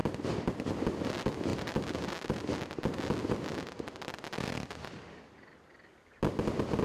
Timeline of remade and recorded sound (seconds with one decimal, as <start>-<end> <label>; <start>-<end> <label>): 0.0-6.8 recorded